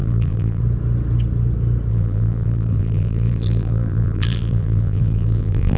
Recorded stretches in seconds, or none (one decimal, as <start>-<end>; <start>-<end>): 0.6-1.9